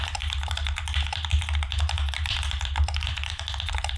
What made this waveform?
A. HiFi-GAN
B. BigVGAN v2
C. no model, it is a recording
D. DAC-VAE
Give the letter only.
C